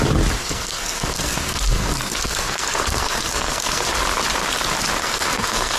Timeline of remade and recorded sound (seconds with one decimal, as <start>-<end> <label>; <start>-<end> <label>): 0.0-0.4 recorded; 0.4-3.9 remade; 3.9-5.0 recorded; 5.0-5.8 remade